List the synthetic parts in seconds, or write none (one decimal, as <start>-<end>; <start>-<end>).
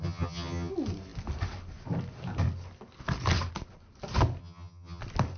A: 0.0-0.7; 4.4-5.0